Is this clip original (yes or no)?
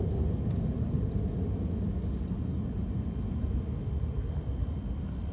yes